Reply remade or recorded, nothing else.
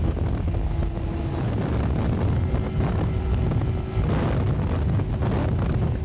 recorded